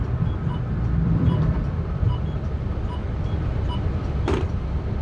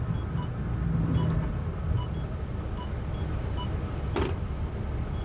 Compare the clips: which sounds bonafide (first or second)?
second